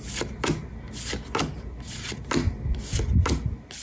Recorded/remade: recorded